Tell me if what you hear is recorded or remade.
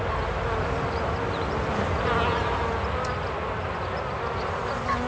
recorded